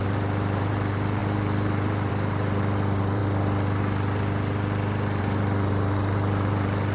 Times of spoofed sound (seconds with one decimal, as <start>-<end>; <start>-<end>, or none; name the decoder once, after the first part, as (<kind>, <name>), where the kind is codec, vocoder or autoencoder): 0.0-3.2 (vocoder, BigVGAN v2); 5.2-6.9